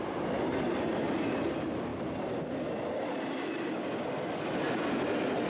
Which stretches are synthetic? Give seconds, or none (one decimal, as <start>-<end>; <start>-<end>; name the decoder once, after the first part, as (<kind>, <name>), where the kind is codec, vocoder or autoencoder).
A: none